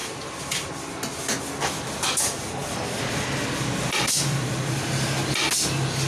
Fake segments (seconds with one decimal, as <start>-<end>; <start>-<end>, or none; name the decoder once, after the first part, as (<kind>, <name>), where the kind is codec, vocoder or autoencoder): none